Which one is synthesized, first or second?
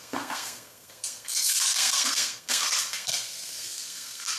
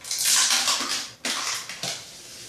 first